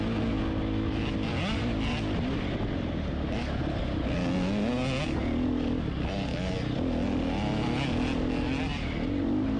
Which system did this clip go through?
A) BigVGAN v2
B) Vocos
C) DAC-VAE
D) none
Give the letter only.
D